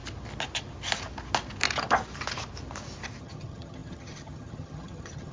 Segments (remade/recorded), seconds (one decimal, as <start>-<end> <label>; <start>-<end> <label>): 0.0-3.2 recorded; 3.2-5.3 remade